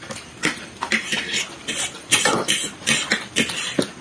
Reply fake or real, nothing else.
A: fake